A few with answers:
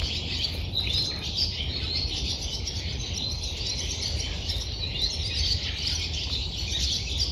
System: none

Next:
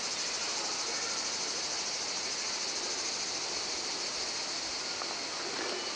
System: none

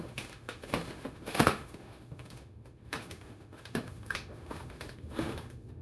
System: autoencoder, DAC-VAE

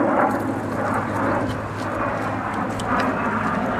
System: none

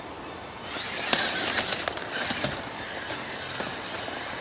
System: none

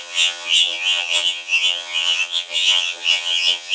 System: vocoder, HiFi-GAN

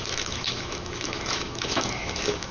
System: autoencoder, DAC-VAE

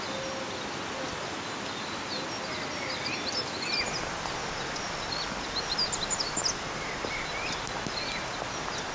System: none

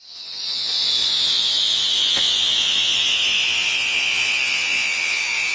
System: vocoder, Vocos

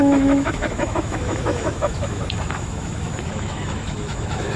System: autoencoder, DAC-VAE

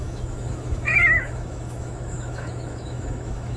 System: autoencoder, DAC-VAE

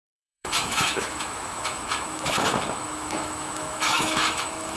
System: autoencoder, DAC-VAE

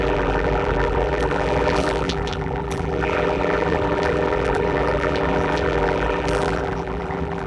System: vocoder, BigVGAN v2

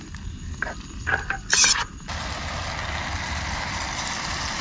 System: none